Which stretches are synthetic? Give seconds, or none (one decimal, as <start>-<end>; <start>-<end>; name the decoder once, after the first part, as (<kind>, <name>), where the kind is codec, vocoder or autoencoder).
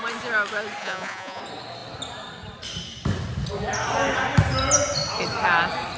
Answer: 0.8-1.4 (vocoder, Vocos)